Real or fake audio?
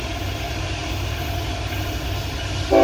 real